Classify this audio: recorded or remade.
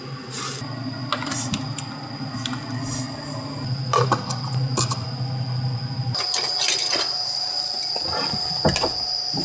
recorded